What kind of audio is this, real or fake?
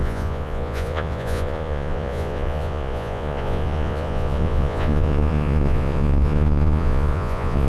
fake